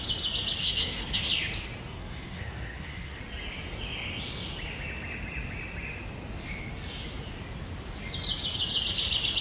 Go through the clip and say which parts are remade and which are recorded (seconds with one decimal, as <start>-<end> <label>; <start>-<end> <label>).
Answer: 0.0-0.6 recorded; 0.6-1.3 remade; 1.3-1.9 recorded; 1.9-3.2 remade; 3.2-9.4 recorded